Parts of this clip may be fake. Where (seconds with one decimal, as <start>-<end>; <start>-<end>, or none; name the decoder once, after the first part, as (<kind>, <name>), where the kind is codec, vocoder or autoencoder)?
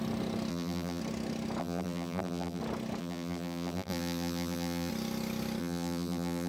0.5-1.0 (vocoder, BigVGAN v2); 1.6-2.6; 3.0-4.9; 5.6-6.5